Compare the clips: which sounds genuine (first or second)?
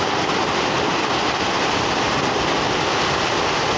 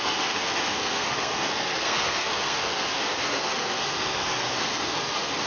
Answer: first